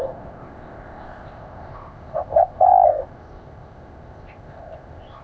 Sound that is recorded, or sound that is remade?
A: remade